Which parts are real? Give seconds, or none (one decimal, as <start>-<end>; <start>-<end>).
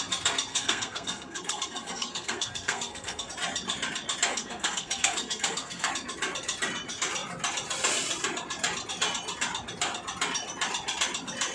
0.0-0.5; 3.3-4.3; 5.9-11.5